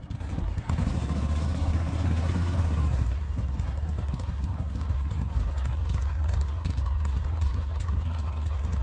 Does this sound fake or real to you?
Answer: fake